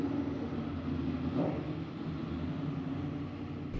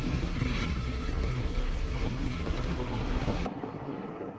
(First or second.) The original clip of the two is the first